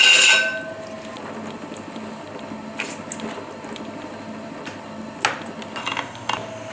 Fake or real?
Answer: real